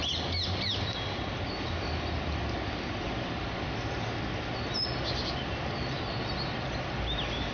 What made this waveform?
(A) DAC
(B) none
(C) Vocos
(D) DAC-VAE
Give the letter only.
B